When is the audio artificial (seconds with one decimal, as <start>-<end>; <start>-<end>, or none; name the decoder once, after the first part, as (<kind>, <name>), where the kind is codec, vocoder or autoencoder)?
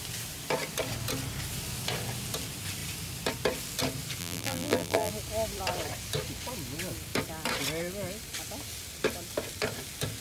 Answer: 4.2-5.1 (vocoder, BigVGAN v2)